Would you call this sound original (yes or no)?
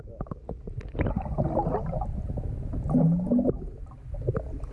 yes